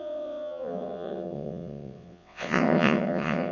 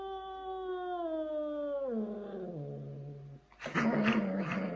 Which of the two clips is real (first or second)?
second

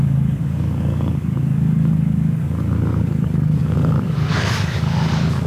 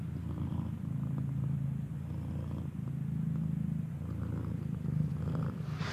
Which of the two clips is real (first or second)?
second